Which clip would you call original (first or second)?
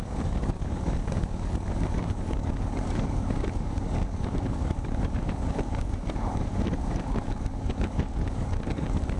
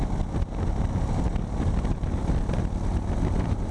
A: second